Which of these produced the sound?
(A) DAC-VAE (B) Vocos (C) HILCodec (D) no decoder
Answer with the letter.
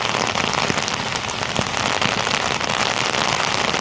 D